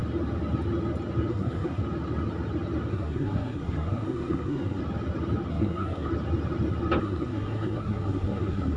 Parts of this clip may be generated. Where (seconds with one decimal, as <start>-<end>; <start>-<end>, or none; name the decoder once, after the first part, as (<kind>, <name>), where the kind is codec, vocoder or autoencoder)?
1.3-1.8 (codec, SNAC); 2.9-4.8; 5.5-6.1; 7.0-8.8